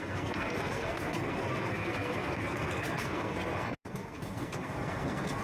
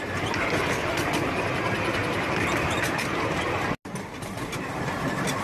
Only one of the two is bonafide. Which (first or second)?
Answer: second